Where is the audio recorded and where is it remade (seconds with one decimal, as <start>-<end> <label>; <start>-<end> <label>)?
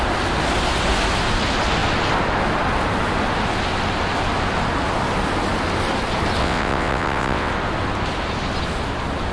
0.0-6.4 recorded; 6.4-7.5 remade; 7.5-9.3 recorded